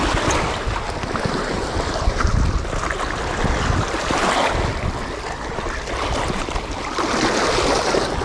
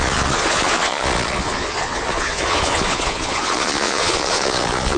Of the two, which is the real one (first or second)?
first